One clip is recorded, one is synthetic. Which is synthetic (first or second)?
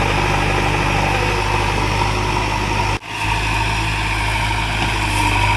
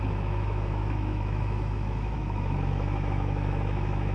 second